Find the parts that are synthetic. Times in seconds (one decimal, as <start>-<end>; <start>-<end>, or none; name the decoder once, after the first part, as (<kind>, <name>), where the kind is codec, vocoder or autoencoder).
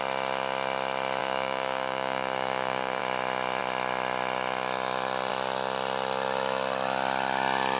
1.2-3.0 (codec, DAC)